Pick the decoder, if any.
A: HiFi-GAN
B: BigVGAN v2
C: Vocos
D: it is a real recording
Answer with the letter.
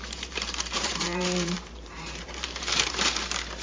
B